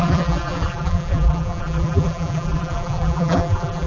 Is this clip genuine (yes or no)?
no